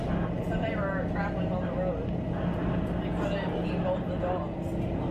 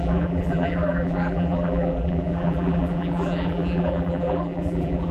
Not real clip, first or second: second